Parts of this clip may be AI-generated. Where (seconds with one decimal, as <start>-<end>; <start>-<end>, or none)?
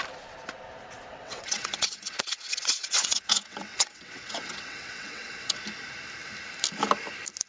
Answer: 1.1-5.6